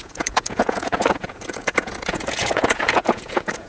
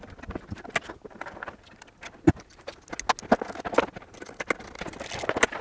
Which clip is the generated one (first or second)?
first